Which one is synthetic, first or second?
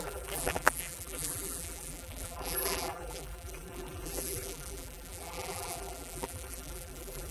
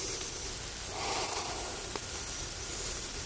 first